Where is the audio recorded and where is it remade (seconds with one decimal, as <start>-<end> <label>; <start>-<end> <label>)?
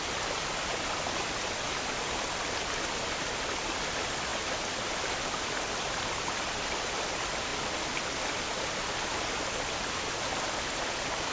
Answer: 0.0-11.3 recorded